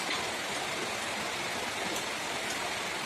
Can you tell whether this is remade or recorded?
recorded